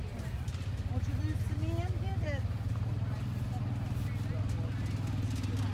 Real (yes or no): yes